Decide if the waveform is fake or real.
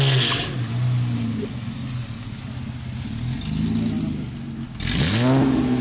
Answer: real